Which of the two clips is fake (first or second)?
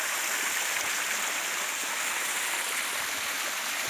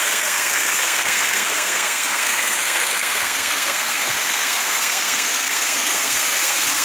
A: second